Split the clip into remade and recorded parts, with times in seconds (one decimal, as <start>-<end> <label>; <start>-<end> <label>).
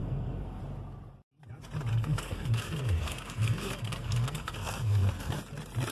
0.0-0.6 remade; 0.6-1.9 recorded; 1.9-5.4 remade; 5.4-5.9 recorded